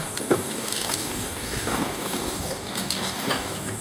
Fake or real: fake